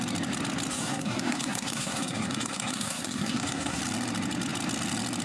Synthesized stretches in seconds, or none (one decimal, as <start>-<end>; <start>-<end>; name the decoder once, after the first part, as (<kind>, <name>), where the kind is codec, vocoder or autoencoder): 0.7-3.8 (codec, SNAC)